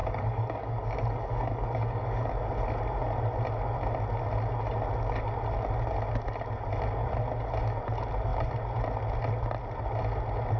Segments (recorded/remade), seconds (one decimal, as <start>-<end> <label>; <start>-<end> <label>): 0.0-2.3 remade; 2.3-10.6 recorded